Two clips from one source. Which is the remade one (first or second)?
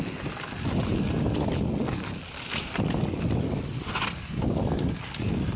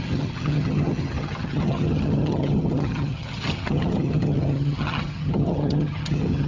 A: second